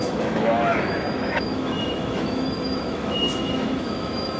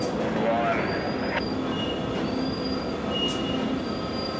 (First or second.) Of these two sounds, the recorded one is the second